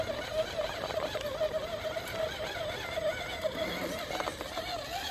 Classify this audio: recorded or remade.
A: recorded